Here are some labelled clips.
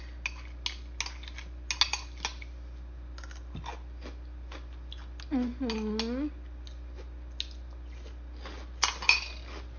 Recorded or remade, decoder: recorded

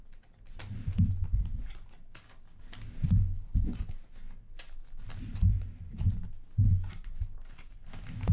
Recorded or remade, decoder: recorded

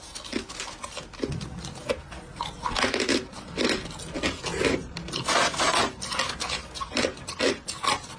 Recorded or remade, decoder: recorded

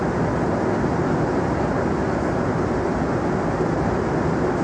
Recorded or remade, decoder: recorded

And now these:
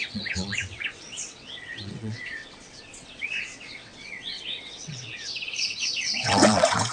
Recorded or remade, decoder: remade, vocoder, WaveNeXt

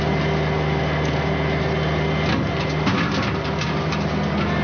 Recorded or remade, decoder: recorded